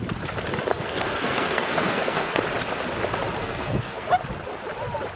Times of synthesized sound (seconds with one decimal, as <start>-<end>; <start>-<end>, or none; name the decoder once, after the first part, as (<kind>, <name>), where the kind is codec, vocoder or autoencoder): 0.7-2.4 (codec, SNAC); 3.4-4.1